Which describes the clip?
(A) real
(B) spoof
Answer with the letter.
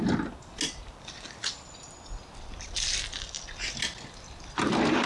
A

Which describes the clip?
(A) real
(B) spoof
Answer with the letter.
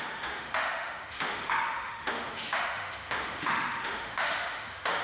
B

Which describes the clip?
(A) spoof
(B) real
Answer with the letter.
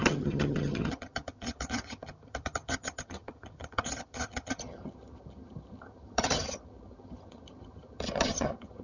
A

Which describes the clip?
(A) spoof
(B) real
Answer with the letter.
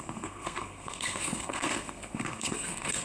A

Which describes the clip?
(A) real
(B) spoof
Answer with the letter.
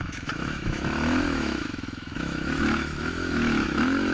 B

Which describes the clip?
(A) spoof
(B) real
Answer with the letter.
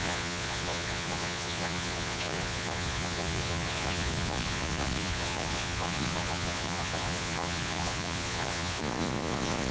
A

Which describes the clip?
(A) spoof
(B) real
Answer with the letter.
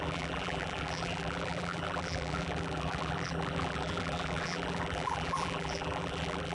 A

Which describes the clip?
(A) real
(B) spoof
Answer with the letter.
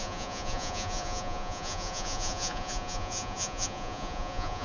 B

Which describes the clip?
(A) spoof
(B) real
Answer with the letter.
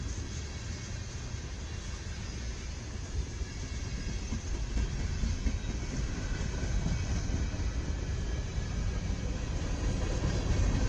B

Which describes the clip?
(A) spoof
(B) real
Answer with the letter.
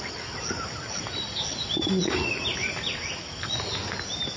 B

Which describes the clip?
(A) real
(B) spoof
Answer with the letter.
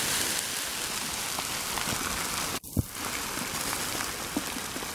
A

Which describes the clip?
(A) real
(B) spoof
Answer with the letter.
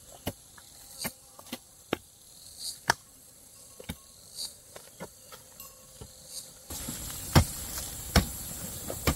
A